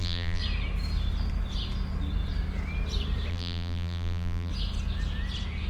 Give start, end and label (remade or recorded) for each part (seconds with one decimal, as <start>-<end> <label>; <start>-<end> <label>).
0.0-0.4 remade; 0.4-3.3 recorded; 3.3-4.5 remade; 4.5-5.7 recorded